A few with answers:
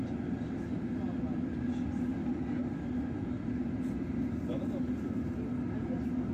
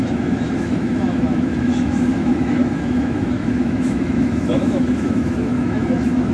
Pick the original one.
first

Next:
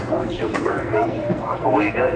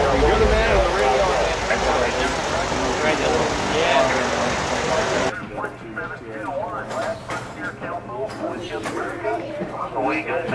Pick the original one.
second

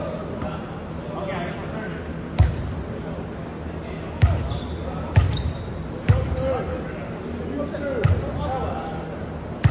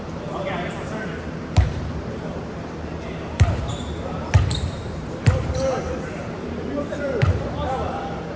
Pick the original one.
first